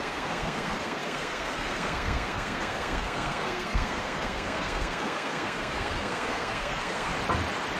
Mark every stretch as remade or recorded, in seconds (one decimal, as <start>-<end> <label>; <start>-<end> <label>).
0.0-7.1 remade; 7.1-7.8 recorded